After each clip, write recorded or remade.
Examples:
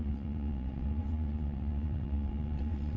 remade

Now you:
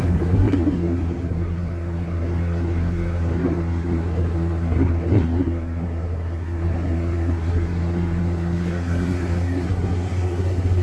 remade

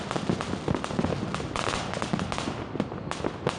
recorded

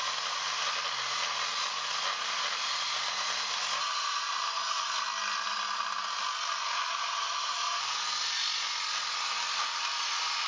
recorded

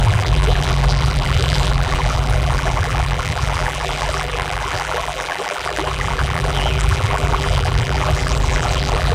remade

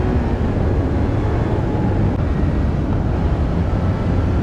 recorded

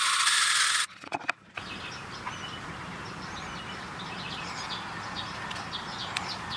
recorded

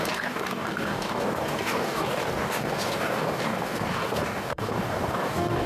remade